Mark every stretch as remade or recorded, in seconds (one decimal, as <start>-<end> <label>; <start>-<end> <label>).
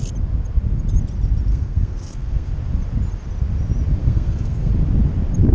0.0-1.5 recorded; 1.5-2.5 remade; 2.5-4.0 recorded; 4.0-4.7 remade; 4.7-5.5 recorded